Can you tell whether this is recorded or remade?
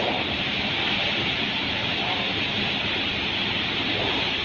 remade